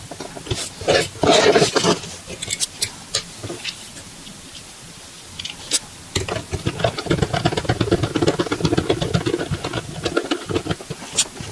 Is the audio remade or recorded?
recorded